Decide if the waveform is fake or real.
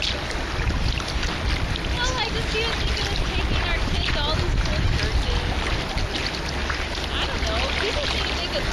real